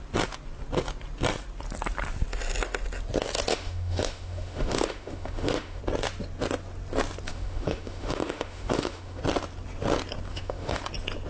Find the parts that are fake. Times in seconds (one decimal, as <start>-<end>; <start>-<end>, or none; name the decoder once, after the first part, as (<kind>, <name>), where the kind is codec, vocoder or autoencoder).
3.5-5.8 (autoencoder, DAC-VAE); 7.3-9.2; 10.3-10.8